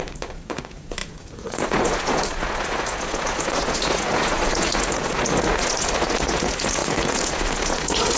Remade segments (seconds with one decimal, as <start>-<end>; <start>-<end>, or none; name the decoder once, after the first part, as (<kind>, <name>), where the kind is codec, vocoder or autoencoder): 0.0-8.2 (vocoder, Vocos)